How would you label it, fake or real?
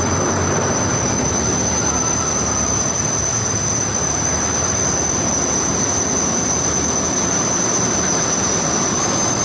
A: fake